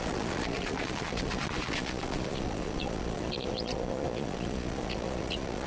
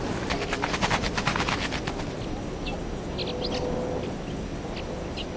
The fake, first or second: first